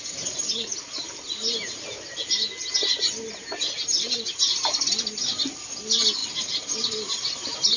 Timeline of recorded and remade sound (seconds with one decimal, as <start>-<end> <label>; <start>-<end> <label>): 0.0-7.8 recorded